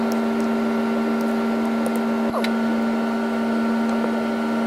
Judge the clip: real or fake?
real